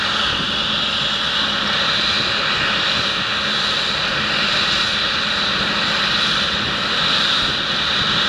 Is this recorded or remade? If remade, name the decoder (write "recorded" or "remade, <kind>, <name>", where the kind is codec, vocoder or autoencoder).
recorded